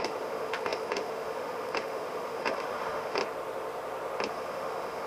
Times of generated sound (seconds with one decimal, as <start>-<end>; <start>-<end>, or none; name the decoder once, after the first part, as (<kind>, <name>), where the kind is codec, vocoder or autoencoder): 0.0-3.2 (autoencoder, DAC-VAE); 4.3-5.1